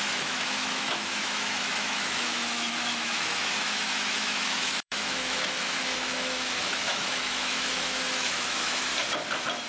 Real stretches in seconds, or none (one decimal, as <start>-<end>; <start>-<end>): 8.9-9.7

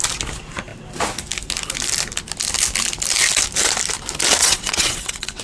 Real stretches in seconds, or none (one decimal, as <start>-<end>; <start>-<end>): 0.0-4.4

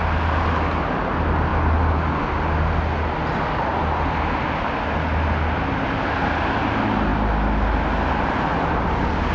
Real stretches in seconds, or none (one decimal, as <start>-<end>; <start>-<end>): 0.0-9.3